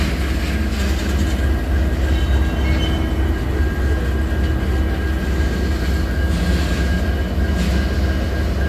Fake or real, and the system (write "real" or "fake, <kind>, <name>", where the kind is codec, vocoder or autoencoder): real